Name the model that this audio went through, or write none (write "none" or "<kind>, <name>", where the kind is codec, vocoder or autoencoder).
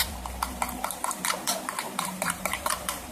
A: vocoder, BigVGAN v2